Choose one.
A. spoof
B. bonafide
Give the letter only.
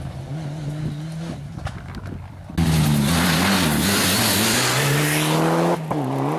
B